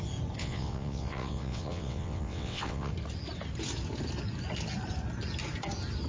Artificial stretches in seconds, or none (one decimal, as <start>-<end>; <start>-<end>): 0.4-2.9